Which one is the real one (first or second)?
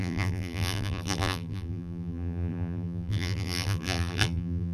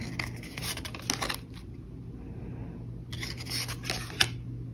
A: second